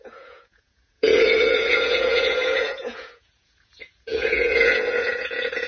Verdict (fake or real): fake